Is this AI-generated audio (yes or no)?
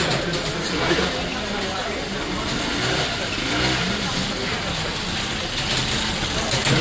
no